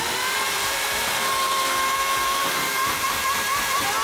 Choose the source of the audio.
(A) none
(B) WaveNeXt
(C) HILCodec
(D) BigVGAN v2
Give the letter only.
D